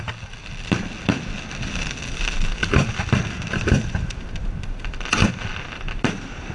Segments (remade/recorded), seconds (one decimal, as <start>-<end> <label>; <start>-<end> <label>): 0.0-6.5 recorded